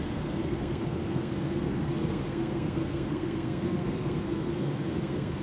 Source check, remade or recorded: remade